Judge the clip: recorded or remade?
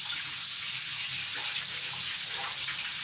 recorded